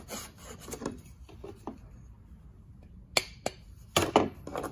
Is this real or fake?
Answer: real